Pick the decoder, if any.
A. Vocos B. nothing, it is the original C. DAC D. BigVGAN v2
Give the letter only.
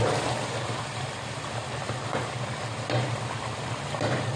B